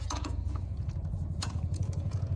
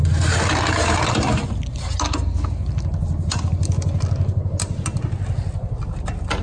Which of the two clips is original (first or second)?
second